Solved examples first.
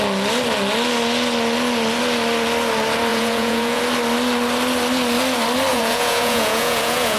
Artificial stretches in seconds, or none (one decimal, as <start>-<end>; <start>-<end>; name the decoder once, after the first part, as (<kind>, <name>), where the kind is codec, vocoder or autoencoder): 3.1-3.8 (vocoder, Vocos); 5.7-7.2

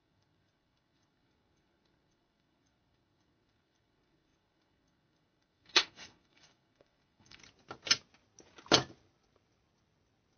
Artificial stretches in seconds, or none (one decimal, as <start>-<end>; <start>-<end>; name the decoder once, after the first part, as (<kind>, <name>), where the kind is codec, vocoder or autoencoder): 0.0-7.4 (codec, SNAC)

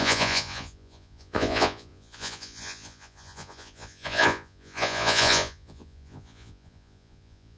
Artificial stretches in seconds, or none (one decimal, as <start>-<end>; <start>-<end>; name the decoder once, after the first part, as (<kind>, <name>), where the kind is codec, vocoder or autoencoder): 0.0-7.6 (vocoder, Vocos)